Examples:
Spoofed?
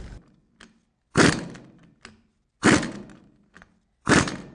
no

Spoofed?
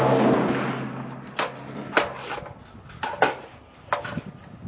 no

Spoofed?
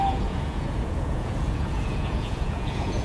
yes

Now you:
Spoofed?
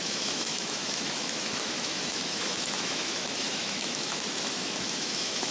yes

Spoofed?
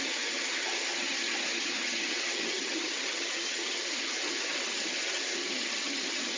yes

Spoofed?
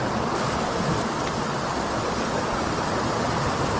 no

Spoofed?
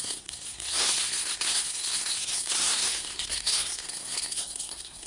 yes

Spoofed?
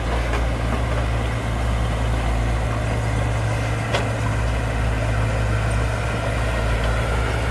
no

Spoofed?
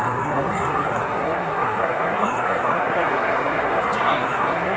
yes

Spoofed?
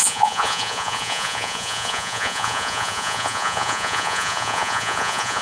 yes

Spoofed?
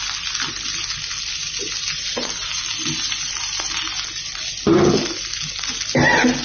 no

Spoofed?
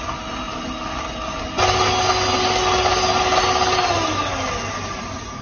no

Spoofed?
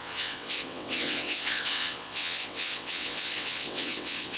yes